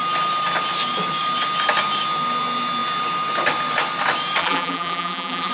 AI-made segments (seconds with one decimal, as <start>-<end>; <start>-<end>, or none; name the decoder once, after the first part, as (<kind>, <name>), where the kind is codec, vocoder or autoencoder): 4.4-5.5 (vocoder, BigVGAN v2)